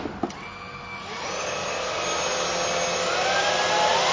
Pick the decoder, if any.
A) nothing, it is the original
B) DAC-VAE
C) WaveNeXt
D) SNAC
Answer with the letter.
A